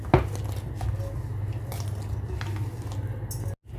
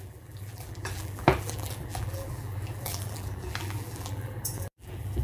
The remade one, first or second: second